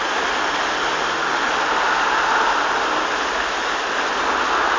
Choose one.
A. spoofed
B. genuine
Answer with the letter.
B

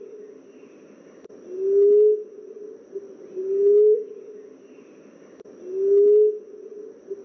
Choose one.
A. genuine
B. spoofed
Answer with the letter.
A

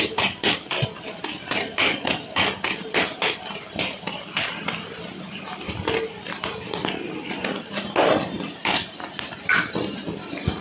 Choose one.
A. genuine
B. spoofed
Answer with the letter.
A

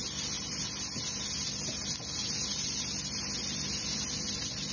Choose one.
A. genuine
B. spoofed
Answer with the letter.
A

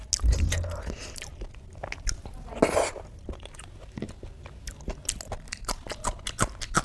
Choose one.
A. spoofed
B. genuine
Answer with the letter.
B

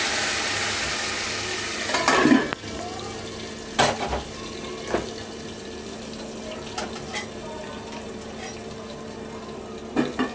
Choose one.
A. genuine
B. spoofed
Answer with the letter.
A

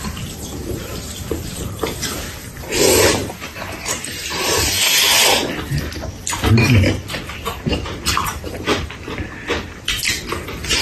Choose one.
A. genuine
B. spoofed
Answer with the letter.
B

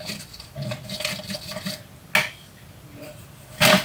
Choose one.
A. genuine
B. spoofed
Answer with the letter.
A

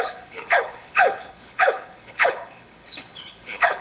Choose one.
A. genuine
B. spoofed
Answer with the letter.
B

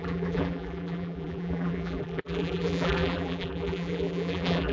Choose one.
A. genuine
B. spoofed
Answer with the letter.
B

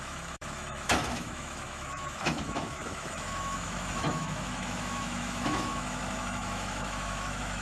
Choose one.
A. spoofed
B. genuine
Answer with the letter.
A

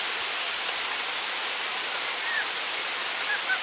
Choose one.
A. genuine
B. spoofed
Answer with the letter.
A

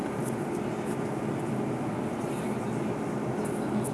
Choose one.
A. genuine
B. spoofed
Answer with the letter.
A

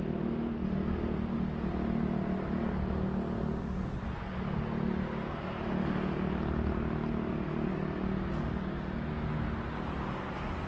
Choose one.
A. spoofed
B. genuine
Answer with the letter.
B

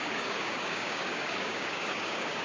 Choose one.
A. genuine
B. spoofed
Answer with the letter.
B